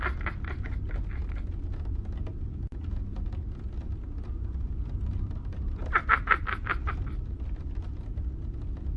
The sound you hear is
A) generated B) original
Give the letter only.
B